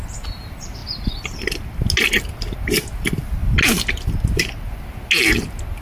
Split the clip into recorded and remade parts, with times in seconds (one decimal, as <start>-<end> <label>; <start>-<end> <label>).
0.0-5.8 recorded